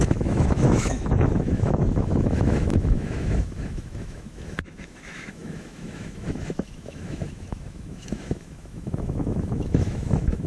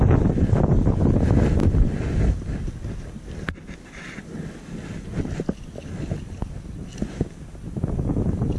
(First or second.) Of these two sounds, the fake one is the first